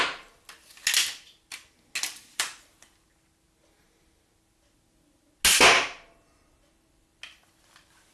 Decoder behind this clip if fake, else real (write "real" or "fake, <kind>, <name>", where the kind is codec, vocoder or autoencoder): real